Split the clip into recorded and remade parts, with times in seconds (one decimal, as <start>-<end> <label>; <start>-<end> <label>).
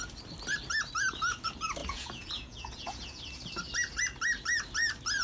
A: 0.0-1.8 recorded; 1.8-3.2 remade; 3.2-5.2 recorded